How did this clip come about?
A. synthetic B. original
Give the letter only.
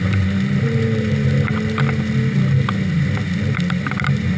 B